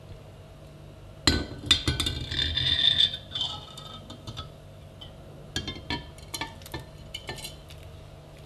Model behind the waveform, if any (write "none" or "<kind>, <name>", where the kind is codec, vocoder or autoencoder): none